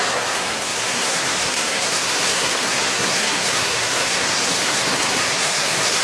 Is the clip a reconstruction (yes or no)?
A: yes